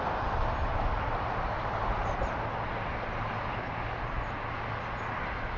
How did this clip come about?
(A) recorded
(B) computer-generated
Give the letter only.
A